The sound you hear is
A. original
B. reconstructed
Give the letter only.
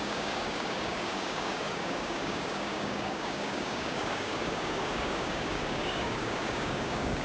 B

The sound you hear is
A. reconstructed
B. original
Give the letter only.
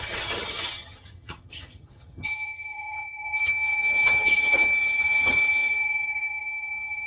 A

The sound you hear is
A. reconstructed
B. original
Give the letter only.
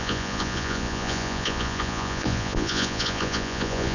A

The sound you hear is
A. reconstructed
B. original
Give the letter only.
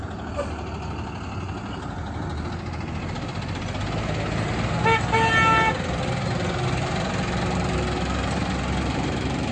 B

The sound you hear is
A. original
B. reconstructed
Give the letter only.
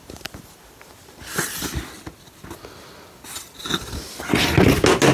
A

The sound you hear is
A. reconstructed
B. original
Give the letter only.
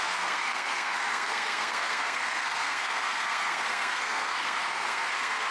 A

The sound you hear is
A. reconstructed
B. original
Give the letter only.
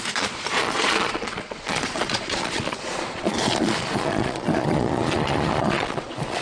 A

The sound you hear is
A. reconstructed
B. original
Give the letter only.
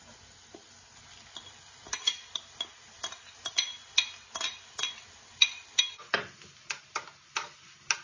B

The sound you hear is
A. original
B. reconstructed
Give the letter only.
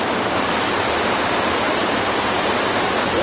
B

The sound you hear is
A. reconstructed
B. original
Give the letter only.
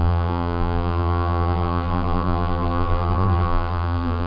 A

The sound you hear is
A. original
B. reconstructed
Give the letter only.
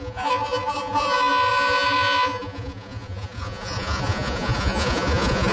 B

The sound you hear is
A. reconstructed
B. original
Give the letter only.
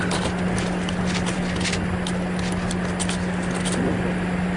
B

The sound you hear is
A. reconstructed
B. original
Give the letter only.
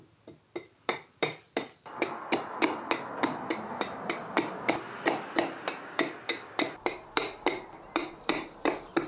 B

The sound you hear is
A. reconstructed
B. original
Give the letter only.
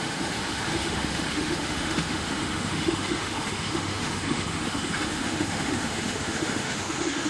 A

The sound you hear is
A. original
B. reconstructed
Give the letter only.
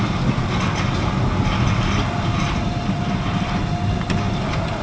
A